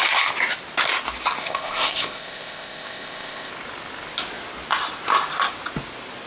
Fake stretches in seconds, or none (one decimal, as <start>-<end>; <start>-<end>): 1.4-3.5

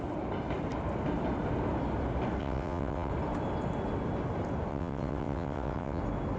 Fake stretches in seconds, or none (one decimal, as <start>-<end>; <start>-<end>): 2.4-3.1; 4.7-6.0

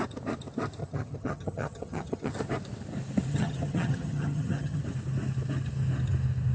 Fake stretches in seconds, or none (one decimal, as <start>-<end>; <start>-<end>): 0.8-2.3; 3.3-4.8

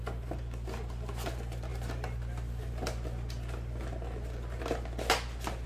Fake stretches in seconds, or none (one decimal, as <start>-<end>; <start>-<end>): none